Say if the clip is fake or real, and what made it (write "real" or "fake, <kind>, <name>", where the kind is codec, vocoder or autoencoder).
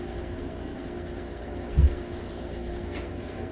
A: fake, codec, SNAC